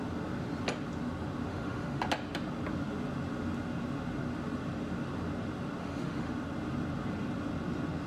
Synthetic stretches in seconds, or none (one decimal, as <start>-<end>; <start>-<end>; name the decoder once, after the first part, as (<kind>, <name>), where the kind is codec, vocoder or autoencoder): 1.5-2.0 (autoencoder, DAC-VAE); 5.8-6.3